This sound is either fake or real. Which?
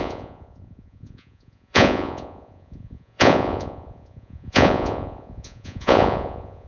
fake